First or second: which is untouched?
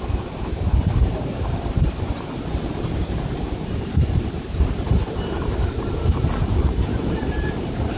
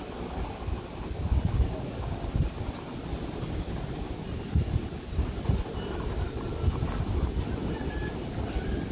second